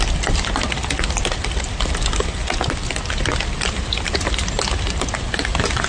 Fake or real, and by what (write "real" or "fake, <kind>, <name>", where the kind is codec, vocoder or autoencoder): real